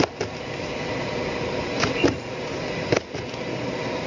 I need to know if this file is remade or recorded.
recorded